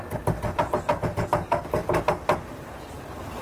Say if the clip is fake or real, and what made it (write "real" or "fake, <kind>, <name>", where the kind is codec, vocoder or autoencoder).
real